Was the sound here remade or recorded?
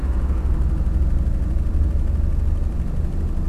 recorded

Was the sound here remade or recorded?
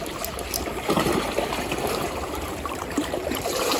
remade